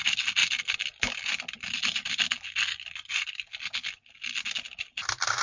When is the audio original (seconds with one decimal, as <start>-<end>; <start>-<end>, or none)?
0.0-5.4